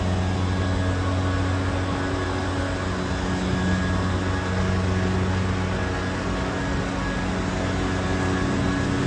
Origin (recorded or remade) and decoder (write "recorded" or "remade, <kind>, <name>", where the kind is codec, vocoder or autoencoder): recorded